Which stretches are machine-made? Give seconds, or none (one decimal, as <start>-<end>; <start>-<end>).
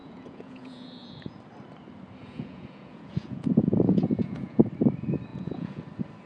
0.0-1.4; 2.2-4.6; 5.3-5.8